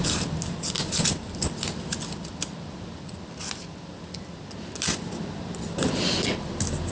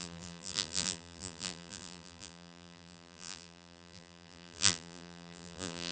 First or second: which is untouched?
first